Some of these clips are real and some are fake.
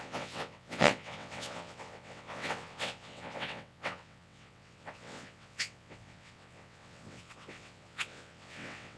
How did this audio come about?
fake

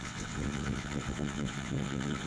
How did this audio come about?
fake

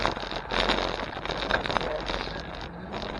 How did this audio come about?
real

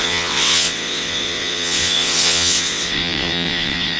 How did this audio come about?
fake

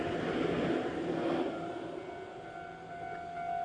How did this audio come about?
real